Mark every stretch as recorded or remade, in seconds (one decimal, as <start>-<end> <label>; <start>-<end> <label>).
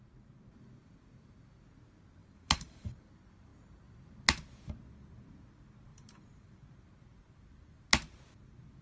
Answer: 0.0-2.2 recorded; 2.2-3.1 remade; 3.1-5.9 recorded; 5.9-6.6 remade; 6.6-8.8 recorded